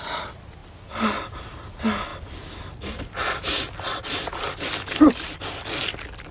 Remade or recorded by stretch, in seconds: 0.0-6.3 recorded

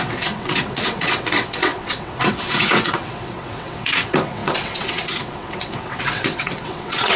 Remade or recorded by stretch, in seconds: 0.0-7.2 remade

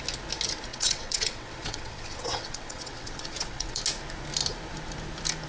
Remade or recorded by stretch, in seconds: 0.0-0.7 recorded; 0.7-3.8 remade; 3.8-5.5 recorded

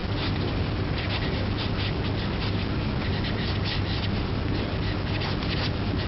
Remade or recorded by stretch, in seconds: 0.0-6.1 recorded

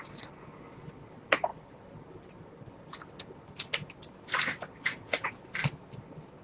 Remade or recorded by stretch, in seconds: 0.0-6.4 recorded

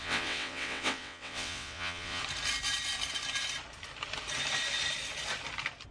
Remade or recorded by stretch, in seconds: 0.0-2.2 remade; 2.2-5.9 recorded